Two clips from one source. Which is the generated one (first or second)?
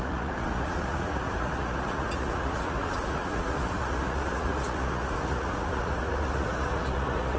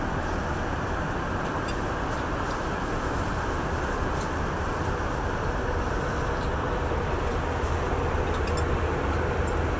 first